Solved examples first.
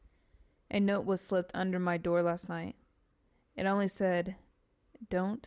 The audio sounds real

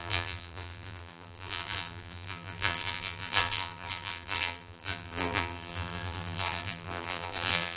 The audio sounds fake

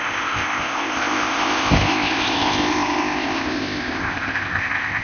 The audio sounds fake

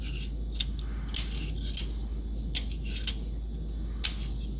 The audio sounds real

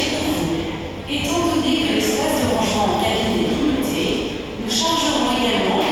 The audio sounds real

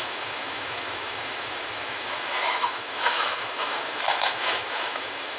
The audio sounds fake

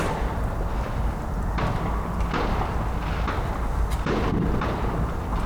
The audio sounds real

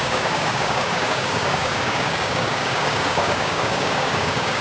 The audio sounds fake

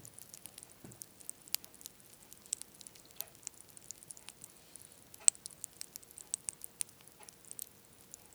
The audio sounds real